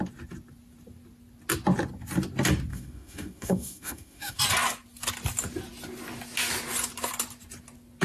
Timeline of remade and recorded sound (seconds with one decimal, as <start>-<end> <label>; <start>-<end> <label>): 0.0-2.7 recorded; 2.7-4.4 remade; 4.4-8.0 recorded